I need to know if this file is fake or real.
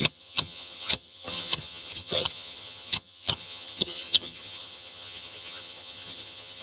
fake